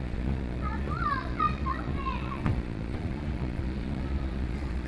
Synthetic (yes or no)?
yes